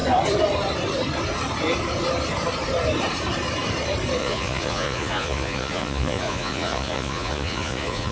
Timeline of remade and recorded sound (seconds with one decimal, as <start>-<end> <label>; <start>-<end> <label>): 0.0-4.2 recorded; 4.2-8.1 remade